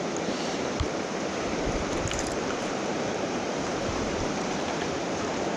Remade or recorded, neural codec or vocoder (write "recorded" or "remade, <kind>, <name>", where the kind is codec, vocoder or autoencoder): remade, vocoder, BigVGAN v2